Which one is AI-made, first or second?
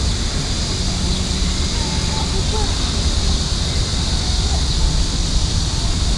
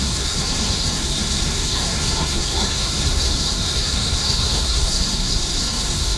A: second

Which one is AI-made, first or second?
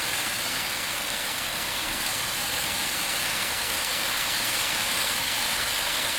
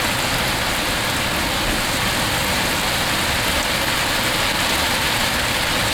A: first